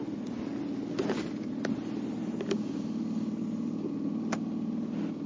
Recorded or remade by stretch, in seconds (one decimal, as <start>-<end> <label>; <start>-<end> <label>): 0.0-5.3 recorded